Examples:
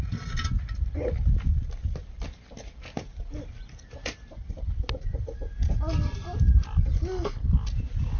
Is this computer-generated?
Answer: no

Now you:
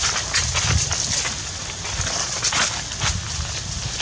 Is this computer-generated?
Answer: no